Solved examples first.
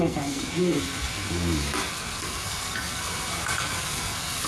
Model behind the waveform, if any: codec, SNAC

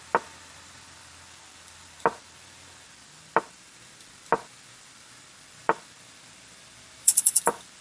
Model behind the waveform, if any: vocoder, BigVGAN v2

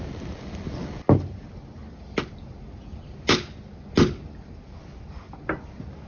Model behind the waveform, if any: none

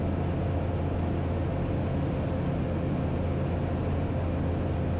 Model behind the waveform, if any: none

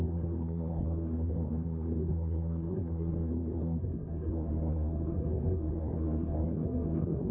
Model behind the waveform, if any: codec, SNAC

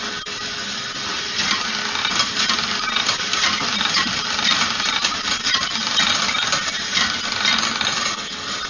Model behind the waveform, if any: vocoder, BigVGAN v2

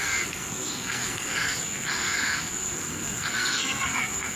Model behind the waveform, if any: codec, SNAC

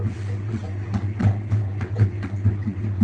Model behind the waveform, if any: vocoder, WaveNeXt